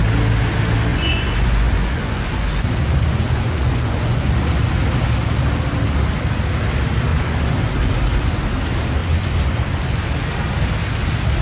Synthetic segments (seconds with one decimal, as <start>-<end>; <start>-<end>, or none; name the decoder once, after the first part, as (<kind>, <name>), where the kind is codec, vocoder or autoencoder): 0.9-4.8 (vocoder, Vocos); 7.1-8.4; 9.0-10.0